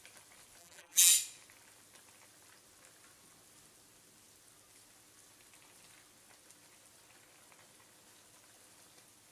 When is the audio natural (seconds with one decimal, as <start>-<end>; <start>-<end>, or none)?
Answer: 0.0-0.6; 1.1-9.3